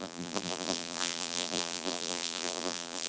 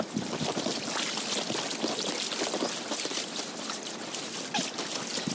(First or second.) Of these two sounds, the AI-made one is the first